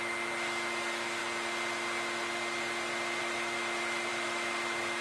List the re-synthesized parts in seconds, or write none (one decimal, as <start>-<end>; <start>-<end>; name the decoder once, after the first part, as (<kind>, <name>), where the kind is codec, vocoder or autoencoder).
0.0-1.2 (autoencoder, DAC-VAE); 3.2-5.0